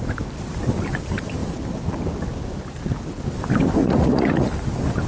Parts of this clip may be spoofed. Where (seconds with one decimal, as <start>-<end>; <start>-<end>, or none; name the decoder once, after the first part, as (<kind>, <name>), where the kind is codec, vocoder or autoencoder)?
3.8-4.5 (vocoder, Vocos)